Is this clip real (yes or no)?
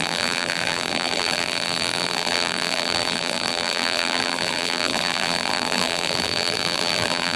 no